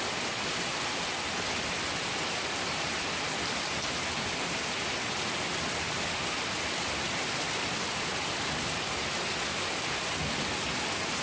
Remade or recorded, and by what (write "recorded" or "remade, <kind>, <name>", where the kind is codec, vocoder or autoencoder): recorded